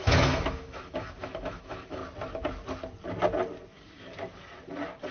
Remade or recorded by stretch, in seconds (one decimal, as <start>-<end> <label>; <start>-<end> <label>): 0.0-2.0 remade; 2.0-5.1 recorded